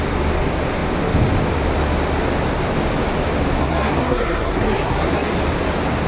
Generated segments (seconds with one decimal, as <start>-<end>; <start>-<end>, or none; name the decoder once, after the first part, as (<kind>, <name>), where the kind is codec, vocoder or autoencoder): 3.6-5.3 (codec, SNAC)